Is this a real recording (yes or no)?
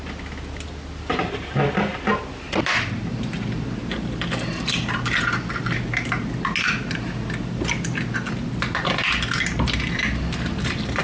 yes